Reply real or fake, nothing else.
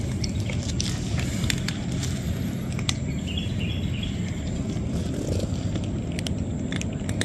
real